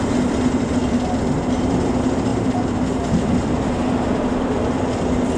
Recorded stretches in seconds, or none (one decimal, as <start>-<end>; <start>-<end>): 0.0-5.4